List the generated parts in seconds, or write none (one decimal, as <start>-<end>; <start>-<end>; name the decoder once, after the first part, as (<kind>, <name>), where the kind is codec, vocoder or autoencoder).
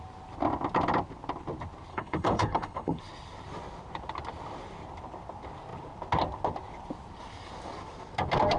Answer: 1.9-3.0 (codec, HILCodec)